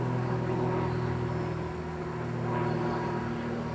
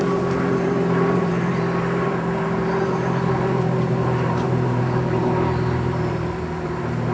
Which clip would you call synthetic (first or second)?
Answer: second